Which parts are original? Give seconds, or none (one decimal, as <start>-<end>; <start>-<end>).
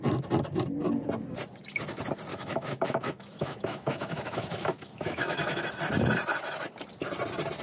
0.0-2.3; 5.6-7.6